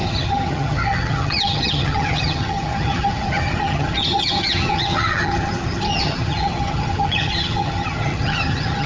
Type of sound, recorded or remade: remade